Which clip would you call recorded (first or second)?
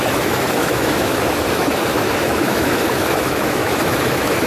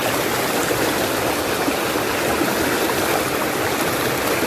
second